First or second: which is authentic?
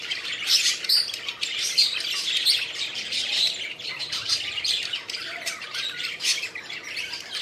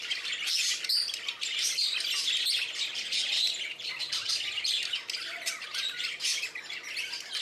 second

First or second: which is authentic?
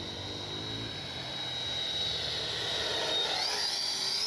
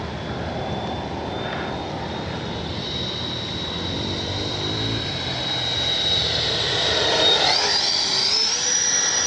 first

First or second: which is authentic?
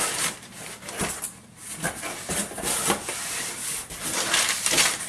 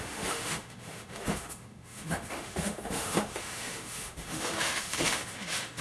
first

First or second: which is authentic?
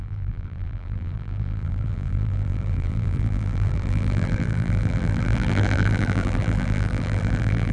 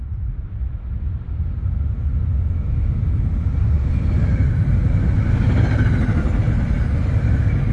second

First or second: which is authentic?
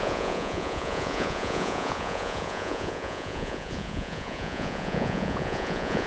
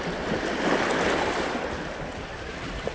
second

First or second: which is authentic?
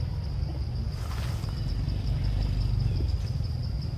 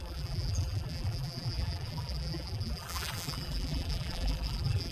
first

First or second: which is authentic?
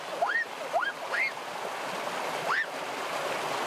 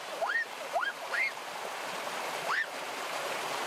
first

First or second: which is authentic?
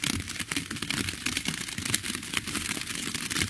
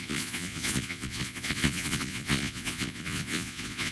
first